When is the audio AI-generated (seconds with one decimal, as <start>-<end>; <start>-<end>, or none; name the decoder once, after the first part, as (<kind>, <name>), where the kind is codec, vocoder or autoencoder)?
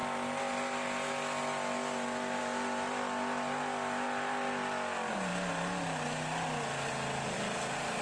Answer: none